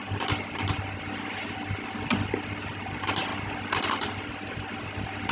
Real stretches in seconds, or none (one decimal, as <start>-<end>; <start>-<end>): 0.0-5.3